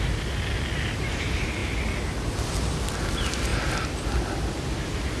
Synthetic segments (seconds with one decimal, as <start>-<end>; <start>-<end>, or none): none